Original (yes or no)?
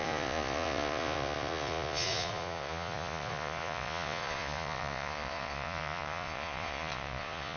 no